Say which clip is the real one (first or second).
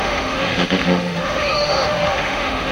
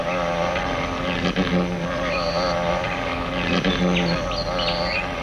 second